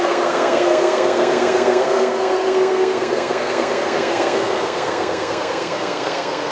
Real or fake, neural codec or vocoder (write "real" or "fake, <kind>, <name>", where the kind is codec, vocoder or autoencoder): fake, codec, SNAC